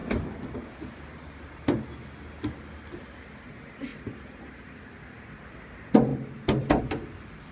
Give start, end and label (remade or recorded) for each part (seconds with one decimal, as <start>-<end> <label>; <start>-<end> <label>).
0.0-6.1 recorded; 6.1-6.8 remade; 6.8-7.5 recorded